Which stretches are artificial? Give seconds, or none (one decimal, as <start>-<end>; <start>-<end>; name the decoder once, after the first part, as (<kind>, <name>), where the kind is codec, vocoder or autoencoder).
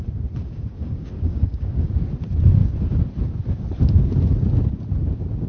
0.4-1.9 (codec, DAC)